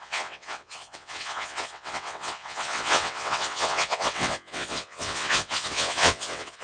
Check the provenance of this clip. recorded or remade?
remade